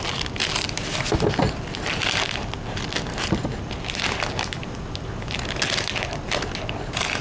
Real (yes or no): yes